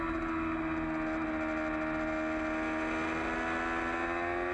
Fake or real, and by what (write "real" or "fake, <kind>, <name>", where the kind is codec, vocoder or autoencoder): real